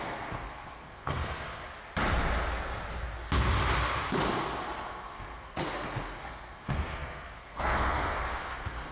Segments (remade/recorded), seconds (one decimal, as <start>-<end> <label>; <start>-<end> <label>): 0.0-1.6 remade; 1.6-4.7 recorded; 4.7-8.9 remade